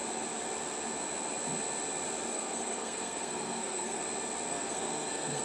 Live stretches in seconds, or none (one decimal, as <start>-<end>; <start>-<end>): 0.0-2.3; 4.0-4.5